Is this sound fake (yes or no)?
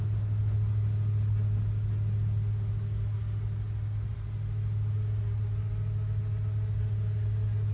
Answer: no